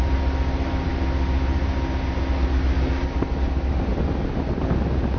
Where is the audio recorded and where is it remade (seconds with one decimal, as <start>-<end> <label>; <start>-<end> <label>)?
0.0-5.2 recorded